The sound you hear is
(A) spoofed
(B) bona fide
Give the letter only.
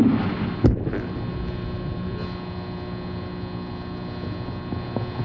B